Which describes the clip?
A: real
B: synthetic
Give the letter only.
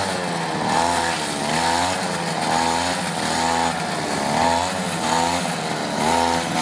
A